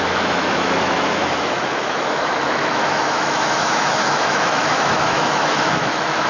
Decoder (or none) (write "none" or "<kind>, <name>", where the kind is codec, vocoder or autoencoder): autoencoder, DAC-VAE